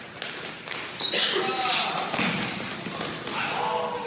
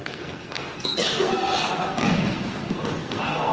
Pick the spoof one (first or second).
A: second